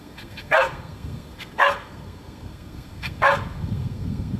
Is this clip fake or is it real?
fake